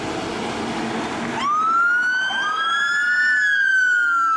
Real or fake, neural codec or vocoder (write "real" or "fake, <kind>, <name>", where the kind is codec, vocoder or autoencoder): real